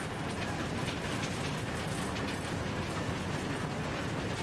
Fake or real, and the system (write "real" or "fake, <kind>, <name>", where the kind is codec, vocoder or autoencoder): real